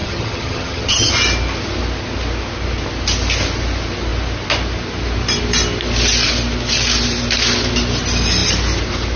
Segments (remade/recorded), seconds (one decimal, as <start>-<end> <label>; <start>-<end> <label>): 0.0-1.1 remade; 1.1-9.2 recorded